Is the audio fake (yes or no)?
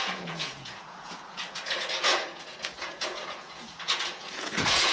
yes